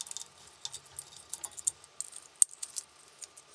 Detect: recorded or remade recorded